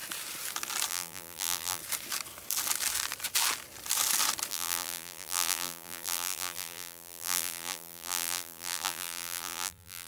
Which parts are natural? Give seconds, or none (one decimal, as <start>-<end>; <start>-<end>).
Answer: 0.0-0.9; 1.8-4.5